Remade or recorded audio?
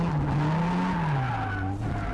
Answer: recorded